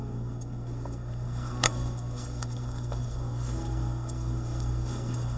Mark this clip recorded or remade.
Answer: remade